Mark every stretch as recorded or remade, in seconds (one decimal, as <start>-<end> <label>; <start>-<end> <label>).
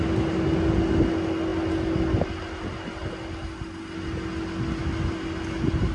0.0-5.9 recorded